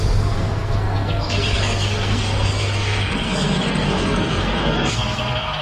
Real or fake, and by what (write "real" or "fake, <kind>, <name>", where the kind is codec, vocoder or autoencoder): fake, codec, SNAC